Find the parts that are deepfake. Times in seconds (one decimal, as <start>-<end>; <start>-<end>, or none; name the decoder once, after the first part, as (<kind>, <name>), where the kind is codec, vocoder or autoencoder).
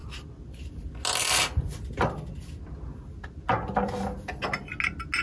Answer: none